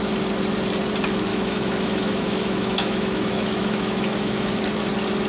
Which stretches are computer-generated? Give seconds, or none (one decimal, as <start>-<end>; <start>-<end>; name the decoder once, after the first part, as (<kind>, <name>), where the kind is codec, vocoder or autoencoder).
1.3-4.5 (autoencoder, DAC-VAE)